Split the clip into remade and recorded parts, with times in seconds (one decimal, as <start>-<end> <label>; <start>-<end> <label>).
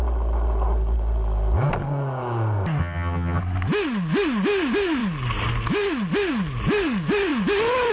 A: 0.0-2.8 recorded; 2.8-3.4 remade; 3.4-7.9 recorded